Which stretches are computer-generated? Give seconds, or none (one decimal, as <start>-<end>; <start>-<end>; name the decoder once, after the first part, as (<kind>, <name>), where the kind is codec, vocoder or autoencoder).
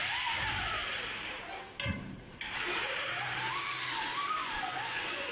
4.4-5.3 (vocoder, Vocos)